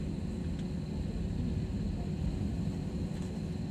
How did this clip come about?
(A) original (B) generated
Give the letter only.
A